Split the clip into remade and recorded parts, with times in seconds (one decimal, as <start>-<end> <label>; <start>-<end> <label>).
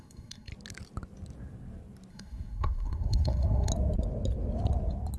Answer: 0.0-0.5 remade; 0.5-2.1 recorded; 2.1-3.7 remade; 3.7-5.2 recorded